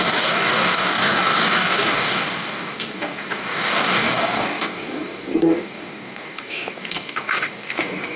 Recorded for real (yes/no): no